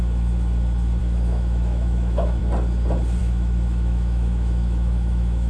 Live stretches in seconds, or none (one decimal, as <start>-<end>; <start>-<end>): 0.0-1.0; 2.4-3.2